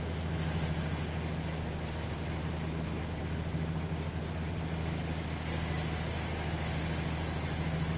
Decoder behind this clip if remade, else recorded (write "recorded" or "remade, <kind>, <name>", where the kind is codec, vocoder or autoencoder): recorded